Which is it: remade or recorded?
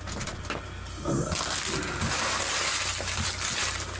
recorded